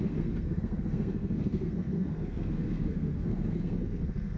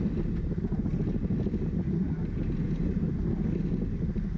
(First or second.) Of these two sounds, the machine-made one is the first